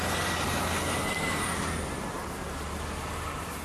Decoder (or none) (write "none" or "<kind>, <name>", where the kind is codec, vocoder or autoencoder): none